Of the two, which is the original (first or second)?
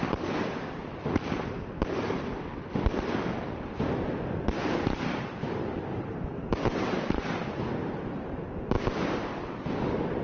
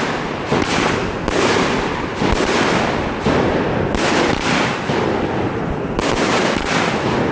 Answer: second